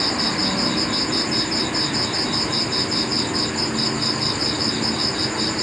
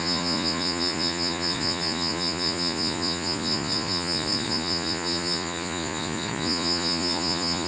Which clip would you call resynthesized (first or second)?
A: second